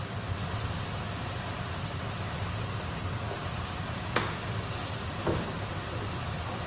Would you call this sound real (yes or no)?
no